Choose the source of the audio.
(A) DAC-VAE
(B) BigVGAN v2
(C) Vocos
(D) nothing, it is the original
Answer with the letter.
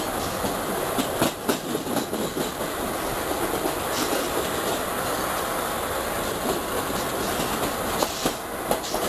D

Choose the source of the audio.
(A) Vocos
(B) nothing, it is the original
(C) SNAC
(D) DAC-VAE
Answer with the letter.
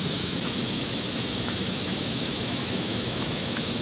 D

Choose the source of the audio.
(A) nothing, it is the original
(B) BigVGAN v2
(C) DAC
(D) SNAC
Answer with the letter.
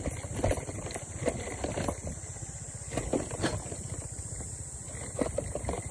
A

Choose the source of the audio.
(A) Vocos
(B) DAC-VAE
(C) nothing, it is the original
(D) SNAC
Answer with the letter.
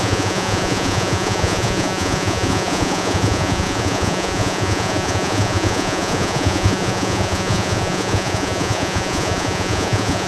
A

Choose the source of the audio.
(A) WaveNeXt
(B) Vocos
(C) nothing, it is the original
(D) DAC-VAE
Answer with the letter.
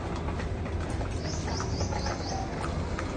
C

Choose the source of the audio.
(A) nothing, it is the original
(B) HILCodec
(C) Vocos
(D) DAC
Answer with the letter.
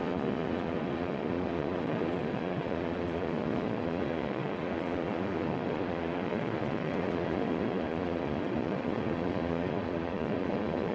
C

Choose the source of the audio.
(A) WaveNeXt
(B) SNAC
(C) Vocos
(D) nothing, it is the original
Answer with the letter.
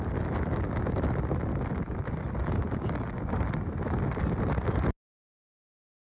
D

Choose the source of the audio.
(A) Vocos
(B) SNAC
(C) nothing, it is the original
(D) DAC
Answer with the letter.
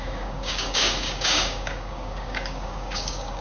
D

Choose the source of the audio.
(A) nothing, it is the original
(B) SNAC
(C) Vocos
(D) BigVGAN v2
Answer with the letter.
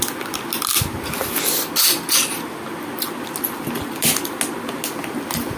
A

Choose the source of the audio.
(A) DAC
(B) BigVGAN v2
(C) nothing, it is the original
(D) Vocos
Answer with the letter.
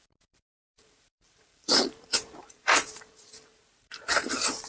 B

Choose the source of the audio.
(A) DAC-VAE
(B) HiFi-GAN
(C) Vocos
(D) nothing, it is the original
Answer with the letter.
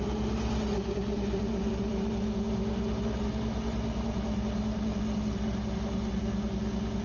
D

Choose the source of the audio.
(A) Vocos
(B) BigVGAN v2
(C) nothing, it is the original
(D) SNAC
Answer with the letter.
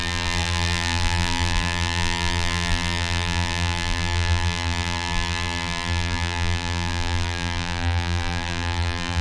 B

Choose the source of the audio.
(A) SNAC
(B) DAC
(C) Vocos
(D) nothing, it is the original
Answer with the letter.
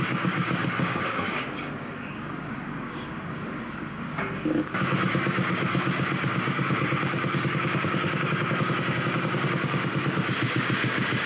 B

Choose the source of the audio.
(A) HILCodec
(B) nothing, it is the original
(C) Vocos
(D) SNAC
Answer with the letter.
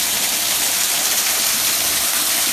B